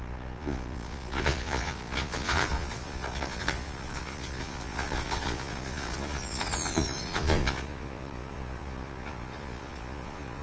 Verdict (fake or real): fake